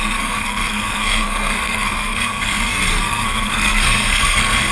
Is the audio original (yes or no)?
no